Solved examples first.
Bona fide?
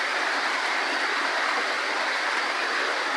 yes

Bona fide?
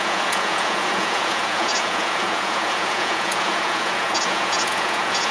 no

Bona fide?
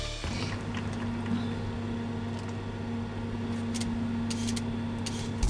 yes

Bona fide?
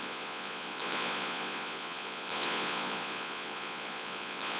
no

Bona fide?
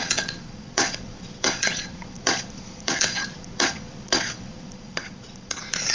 no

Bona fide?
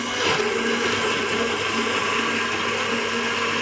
yes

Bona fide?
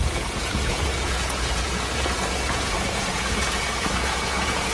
no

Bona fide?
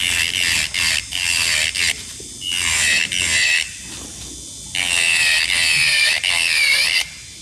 yes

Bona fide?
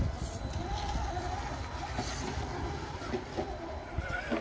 yes